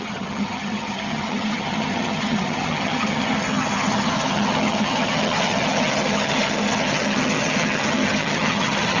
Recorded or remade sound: remade